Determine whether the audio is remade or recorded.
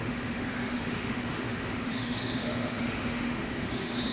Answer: remade